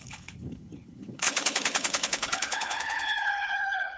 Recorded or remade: remade